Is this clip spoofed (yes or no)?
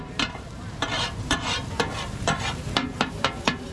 yes